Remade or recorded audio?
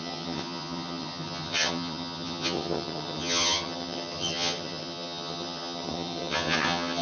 remade